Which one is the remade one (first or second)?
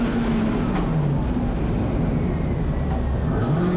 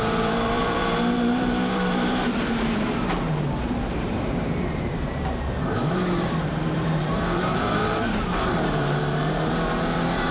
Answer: second